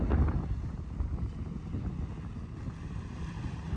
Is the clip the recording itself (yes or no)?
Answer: yes